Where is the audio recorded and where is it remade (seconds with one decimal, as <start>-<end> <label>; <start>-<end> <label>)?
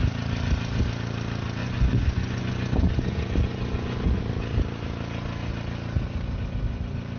0.0-1.6 recorded; 1.6-4.2 remade; 4.2-7.2 recorded